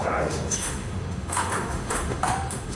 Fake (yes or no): yes